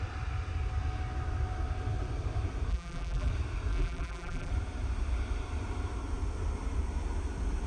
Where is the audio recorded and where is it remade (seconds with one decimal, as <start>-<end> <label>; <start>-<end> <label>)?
0.0-2.7 recorded; 2.7-3.3 remade; 3.3-3.7 recorded; 3.7-4.5 remade; 4.5-7.7 recorded